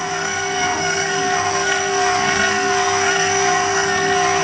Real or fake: fake